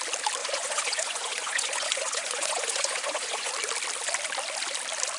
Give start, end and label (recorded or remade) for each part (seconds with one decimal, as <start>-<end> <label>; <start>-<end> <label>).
0.0-0.4 recorded; 0.4-3.5 remade; 3.5-5.2 recorded